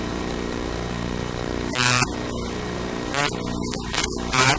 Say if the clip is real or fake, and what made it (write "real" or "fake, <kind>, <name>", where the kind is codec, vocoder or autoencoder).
fake, vocoder, BigVGAN v2